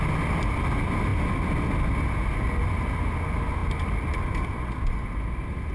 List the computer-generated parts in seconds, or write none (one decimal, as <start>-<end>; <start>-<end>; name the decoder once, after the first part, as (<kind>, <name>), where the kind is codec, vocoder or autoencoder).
none